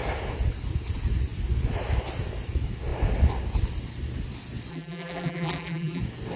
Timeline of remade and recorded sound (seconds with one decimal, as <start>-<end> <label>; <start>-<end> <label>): 0.0-4.7 recorded; 4.7-6.0 remade; 6.0-6.4 recorded